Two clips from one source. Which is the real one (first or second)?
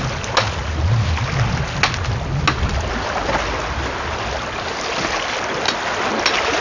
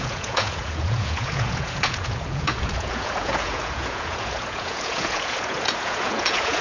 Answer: first